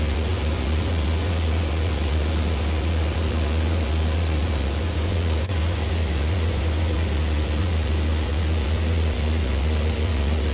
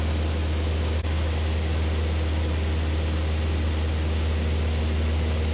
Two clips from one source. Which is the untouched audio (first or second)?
second